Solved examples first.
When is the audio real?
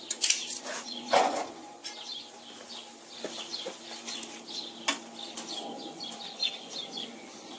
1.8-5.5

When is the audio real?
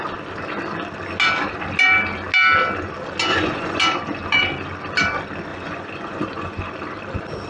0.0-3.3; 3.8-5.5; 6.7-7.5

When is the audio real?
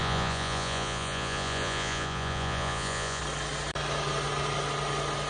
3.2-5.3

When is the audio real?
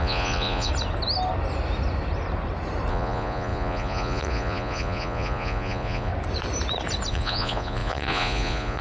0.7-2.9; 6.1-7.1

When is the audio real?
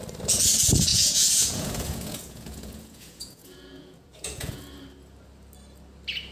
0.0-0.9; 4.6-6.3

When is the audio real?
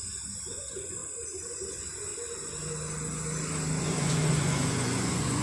1.0-1.7; 2.1-3.8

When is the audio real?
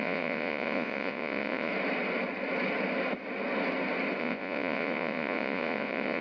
1.7-4.2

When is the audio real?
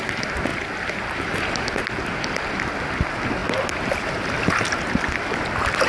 0.0-5.9